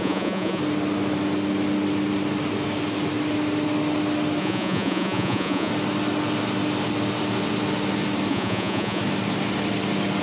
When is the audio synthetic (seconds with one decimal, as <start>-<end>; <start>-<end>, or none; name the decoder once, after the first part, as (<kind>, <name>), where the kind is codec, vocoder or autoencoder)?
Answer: 0.0-0.6 (vocoder, Vocos); 4.4-5.7; 8.3-9.0